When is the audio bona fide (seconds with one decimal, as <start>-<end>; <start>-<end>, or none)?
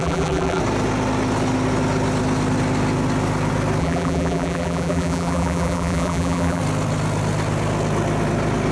0.6-3.8; 6.6-8.7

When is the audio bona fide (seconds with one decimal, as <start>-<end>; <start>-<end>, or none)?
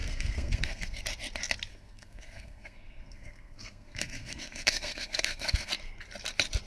1.0-1.7; 5.7-6.7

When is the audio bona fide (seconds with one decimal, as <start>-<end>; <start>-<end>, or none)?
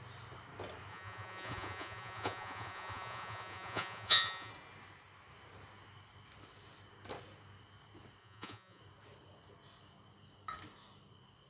0.0-0.9; 4.5-8.2; 8.8-11.5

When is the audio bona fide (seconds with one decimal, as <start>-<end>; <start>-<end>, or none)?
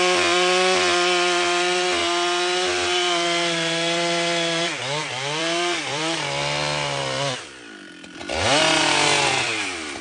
2.0-2.7; 8.2-9.4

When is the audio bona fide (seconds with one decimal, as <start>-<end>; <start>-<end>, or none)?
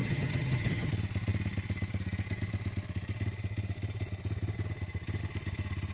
0.9-5.9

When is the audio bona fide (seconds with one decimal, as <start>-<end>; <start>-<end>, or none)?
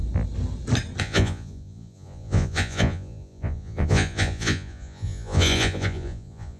0.0-1.0